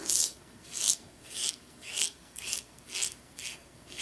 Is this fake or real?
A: fake